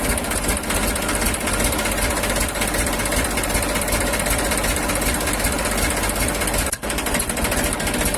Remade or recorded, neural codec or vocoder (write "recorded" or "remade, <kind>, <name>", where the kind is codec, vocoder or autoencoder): recorded